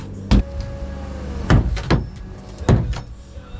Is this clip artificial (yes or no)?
no